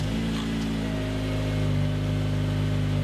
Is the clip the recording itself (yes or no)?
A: yes